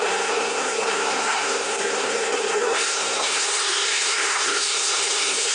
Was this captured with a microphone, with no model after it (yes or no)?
no